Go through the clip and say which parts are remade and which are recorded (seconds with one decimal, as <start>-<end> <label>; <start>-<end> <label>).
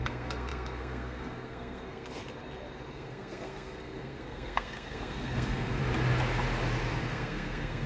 0.0-2.2 remade; 2.2-2.9 recorded; 2.9-5.8 remade; 5.8-7.0 recorded; 7.0-7.9 remade